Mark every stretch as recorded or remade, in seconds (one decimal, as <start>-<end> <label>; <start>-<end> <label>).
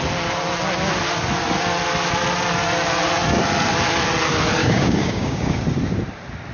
0.0-4.6 recorded; 4.6-5.6 remade; 5.6-6.5 recorded